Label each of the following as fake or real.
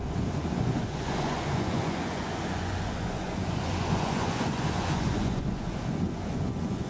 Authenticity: fake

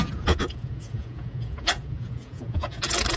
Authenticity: fake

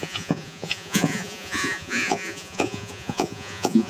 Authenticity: fake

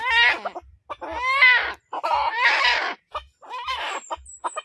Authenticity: real